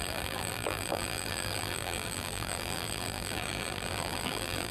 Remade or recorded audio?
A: remade